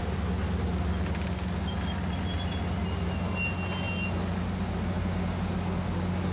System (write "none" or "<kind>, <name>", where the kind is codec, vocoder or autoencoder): none